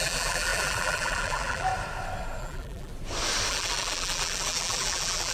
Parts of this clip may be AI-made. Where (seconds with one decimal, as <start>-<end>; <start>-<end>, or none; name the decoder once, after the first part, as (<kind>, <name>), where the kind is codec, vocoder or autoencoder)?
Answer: 0.0-1.7 (vocoder, BigVGAN v2); 2.4-2.9; 3.5-5.3